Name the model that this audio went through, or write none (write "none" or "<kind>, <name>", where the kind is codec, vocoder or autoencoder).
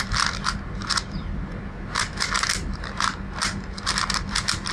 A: none